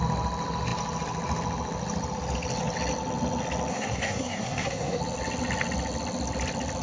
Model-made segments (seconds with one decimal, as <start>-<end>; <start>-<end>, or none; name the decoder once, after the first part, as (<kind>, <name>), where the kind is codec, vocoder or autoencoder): 3.7-5.0 (codec, SNAC)